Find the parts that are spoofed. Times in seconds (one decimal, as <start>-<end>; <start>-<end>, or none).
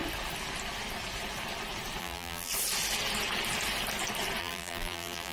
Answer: 2.0-2.5; 4.4-5.3